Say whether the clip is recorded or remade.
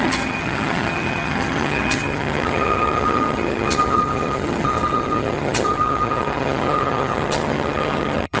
remade